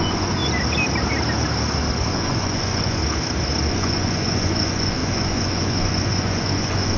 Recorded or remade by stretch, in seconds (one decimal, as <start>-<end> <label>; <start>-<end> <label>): 0.0-0.4 remade; 0.4-2.1 recorded; 2.1-3.0 remade; 3.0-3.7 recorded; 3.7-7.0 remade